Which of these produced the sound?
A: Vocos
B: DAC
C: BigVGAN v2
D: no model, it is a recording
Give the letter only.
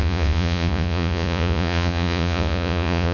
A